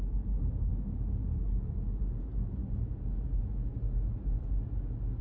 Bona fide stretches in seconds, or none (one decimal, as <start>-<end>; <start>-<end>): 0.0-5.2